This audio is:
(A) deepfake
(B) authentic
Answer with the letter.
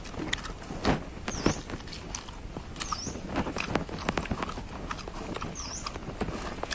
B